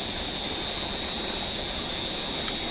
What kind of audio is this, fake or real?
real